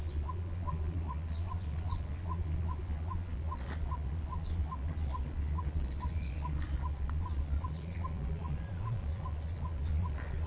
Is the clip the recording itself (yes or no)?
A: no